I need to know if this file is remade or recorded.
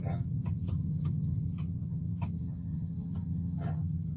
remade